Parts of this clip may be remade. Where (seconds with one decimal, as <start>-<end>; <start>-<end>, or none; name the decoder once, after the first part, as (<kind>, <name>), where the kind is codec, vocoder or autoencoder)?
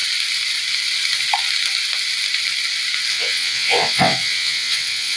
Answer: 3.1-5.2 (vocoder, WaveNeXt)